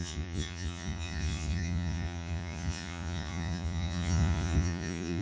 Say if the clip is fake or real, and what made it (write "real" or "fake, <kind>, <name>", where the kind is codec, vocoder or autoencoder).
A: fake, vocoder, Vocos